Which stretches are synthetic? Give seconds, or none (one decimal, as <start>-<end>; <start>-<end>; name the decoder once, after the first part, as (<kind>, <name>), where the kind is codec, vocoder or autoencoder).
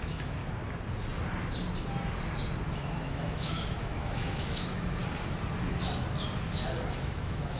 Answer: 0.0-0.4 (autoencoder, DAC-VAE); 2.7-5.0; 7.0-7.6